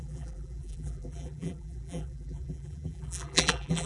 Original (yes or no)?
no